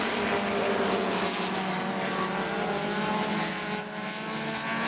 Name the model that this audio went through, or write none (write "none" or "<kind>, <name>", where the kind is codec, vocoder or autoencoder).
none